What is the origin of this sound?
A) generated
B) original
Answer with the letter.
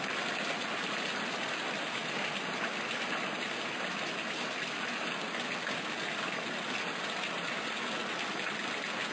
B